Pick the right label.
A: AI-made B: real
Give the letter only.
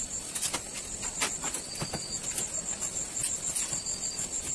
B